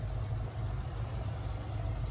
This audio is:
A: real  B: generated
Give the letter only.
A